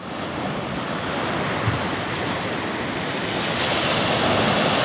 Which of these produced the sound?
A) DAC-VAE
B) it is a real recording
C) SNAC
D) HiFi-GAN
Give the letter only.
B